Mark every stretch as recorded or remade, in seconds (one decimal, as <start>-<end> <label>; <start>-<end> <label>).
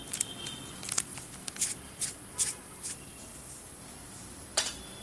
0.0-1.1 recorded; 1.1-4.1 remade; 4.1-5.0 recorded